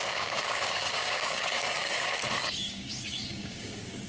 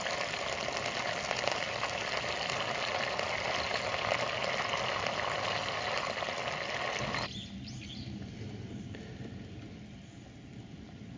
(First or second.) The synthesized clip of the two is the first